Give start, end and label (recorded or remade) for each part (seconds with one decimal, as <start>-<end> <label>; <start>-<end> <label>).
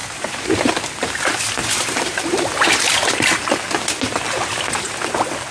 0.0-0.7 remade; 0.7-1.6 recorded; 1.6-3.5 remade; 3.5-5.5 recorded